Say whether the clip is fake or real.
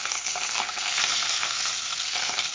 fake